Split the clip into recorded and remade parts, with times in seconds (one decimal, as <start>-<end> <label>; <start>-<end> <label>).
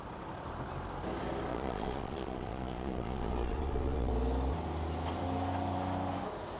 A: 0.0-1.5 recorded; 1.5-4.1 remade; 4.1-6.6 recorded